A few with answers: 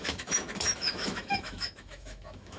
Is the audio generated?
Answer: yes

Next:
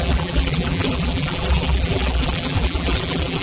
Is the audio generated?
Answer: yes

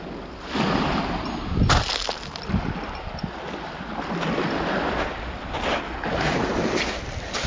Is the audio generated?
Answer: no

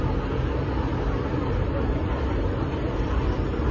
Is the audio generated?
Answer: no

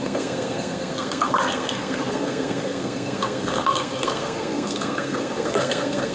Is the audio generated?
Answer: yes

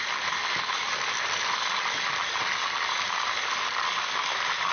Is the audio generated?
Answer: no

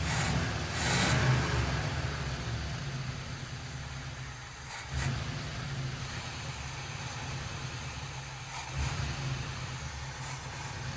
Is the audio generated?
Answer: no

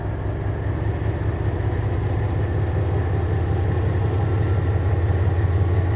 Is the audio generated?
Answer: no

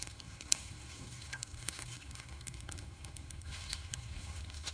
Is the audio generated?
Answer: yes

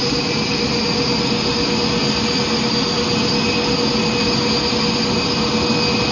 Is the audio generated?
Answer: no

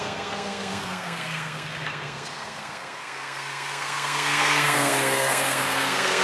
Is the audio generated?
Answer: yes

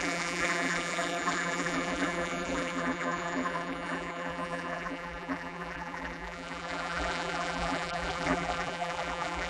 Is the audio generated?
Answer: yes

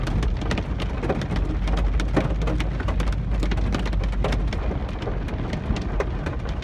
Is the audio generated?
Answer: no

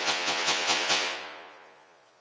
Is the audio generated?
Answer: yes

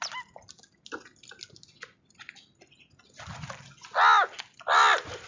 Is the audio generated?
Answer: no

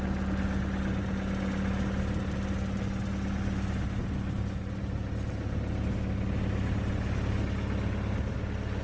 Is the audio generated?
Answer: no